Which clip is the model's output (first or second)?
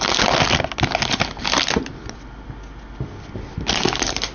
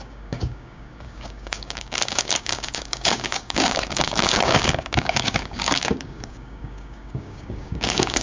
second